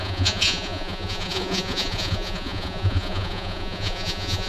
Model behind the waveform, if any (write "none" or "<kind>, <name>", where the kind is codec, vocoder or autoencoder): vocoder, Vocos